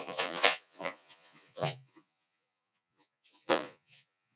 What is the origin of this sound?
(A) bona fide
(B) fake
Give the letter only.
B